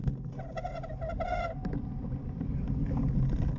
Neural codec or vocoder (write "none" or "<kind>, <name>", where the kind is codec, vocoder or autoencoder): none